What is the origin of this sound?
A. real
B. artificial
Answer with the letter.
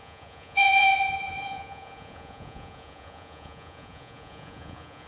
B